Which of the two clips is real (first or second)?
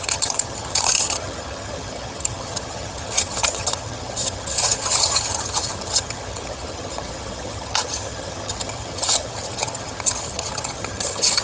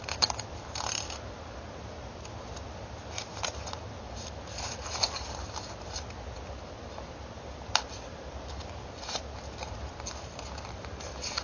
second